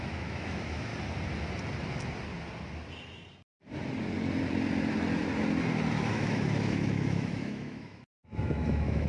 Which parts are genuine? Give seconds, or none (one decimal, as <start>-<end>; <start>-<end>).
0.9-6.1